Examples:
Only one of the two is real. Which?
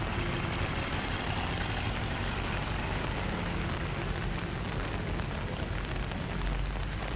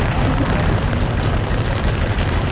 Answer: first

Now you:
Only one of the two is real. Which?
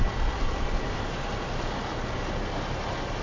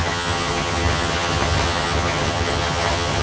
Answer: first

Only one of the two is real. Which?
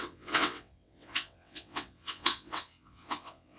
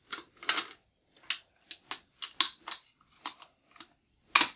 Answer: second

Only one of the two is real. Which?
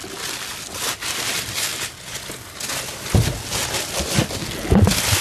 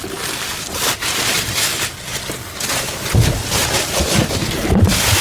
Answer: first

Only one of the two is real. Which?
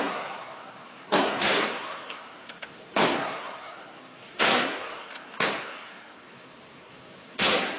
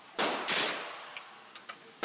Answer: second